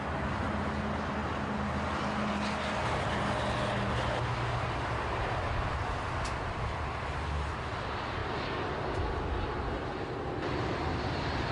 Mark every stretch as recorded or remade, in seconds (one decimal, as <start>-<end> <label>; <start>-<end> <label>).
0.0-11.5 recorded